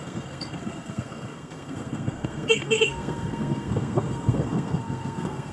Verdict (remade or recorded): remade